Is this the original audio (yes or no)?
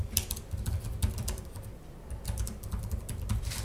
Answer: no